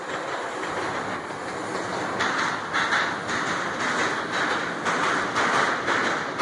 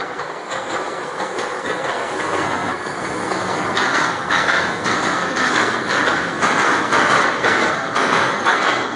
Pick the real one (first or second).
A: first